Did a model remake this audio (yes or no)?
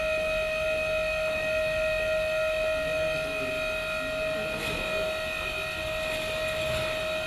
no